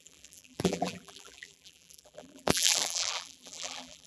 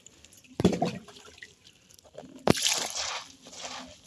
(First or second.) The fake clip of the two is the first